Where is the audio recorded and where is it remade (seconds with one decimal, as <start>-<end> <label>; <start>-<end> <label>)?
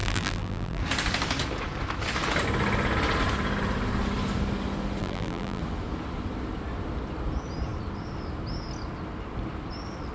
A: 0.0-0.8 remade; 0.8-5.0 recorded; 5.0-5.6 remade; 5.6-10.1 recorded